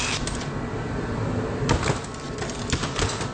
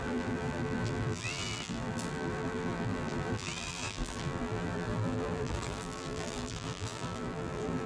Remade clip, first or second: second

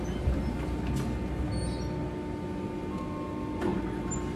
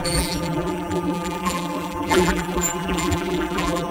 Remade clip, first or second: second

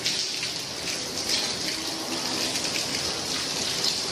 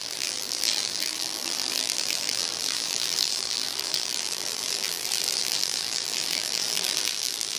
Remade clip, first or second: second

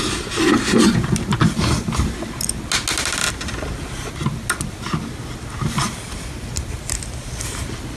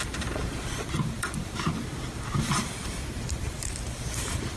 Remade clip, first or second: second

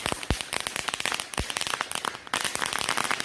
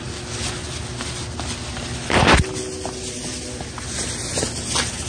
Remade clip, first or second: first